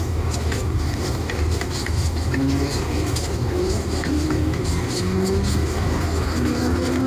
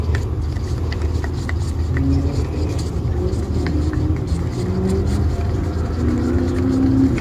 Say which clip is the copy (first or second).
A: first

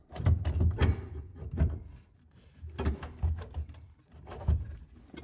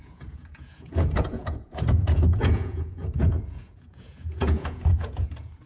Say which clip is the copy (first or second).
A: second